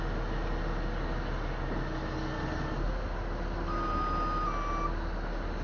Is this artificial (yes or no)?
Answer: no